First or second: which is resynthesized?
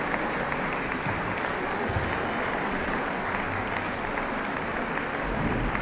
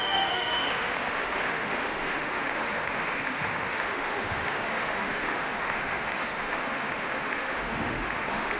second